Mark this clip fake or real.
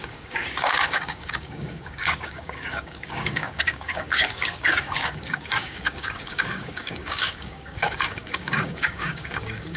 fake